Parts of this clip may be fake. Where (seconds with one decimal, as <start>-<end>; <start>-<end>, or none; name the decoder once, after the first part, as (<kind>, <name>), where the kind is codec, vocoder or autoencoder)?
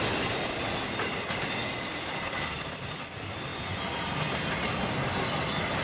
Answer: none